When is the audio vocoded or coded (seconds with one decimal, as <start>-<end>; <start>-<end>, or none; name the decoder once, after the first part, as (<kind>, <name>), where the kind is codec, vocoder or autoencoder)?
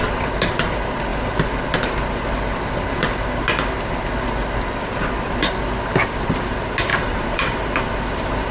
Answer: 6.9-7.4 (vocoder, BigVGAN v2)